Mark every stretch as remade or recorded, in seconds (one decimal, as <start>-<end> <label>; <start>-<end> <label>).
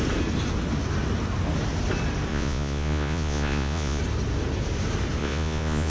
0.0-2.3 recorded; 2.3-4.0 remade; 4.0-5.2 recorded; 5.2-5.9 remade